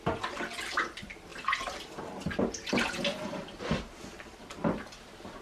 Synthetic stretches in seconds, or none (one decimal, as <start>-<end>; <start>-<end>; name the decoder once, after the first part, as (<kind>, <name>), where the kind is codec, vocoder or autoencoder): none